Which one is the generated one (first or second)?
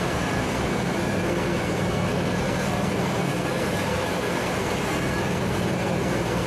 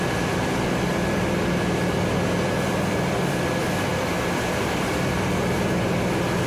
first